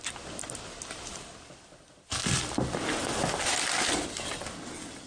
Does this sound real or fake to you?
real